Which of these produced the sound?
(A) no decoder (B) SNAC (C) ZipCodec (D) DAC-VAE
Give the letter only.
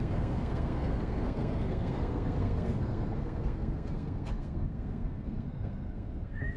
B